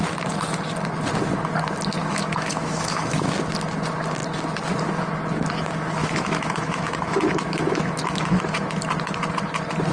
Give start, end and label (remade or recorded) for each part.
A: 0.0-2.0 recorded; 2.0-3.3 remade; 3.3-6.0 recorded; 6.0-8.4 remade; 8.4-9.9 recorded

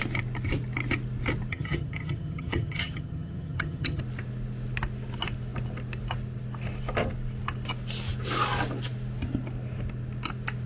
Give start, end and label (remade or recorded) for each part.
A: 0.0-1.5 recorded; 1.5-4.0 remade; 4.0-10.7 recorded

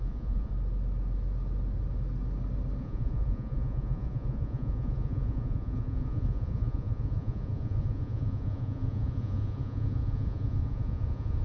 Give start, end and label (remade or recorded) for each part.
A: 0.0-0.5 remade; 0.5-2.8 recorded; 2.8-11.4 remade

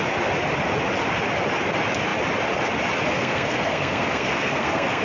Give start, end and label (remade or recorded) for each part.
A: 0.0-3.2 recorded; 3.2-5.0 remade

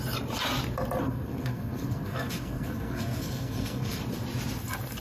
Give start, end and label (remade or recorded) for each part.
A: 0.0-1.0 recorded; 1.0-4.0 remade; 4.0-5.0 recorded

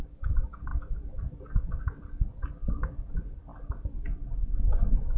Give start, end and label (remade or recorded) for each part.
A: 0.0-5.2 recorded

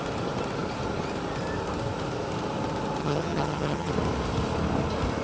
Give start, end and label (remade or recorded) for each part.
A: 0.0-3.0 recorded; 3.0-3.9 remade; 3.9-5.2 recorded